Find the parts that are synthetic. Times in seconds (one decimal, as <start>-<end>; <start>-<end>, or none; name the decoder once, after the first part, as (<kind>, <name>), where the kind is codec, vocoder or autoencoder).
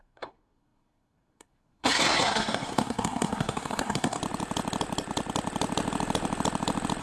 0.0-4.2 (codec, SNAC)